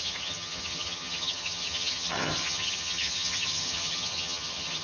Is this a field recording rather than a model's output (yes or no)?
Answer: no